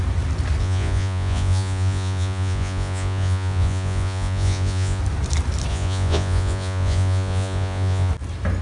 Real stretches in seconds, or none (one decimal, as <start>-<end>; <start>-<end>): 0.0-0.6; 5.0-5.7; 8.1-8.6